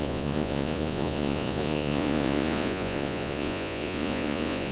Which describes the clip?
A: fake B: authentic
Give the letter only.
A